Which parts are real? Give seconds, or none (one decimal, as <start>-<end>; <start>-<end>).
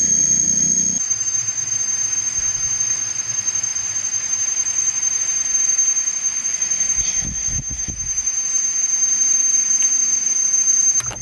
0.0-11.2